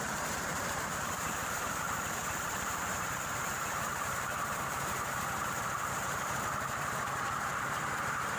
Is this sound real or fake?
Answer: fake